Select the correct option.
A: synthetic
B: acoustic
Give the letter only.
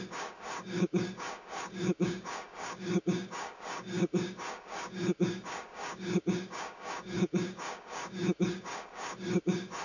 A